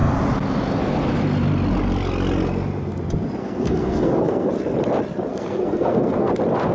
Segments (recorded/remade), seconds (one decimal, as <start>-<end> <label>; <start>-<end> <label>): 0.0-3.4 recorded; 3.4-4.5 remade; 4.5-5.3 recorded; 5.3-6.3 remade; 6.3-6.7 recorded

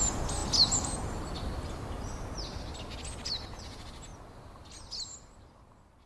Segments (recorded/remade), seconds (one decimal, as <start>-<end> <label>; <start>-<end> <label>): 0.0-6.1 recorded

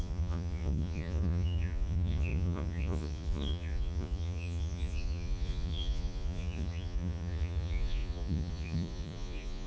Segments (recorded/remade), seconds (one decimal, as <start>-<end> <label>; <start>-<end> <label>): 0.0-9.7 remade

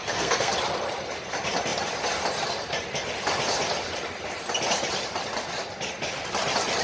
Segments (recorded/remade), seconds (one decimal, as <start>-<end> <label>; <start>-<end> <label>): 0.0-0.5 remade; 0.5-6.8 recorded

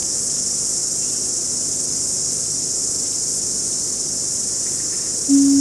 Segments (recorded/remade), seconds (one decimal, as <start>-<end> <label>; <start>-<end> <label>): 0.0-5.6 recorded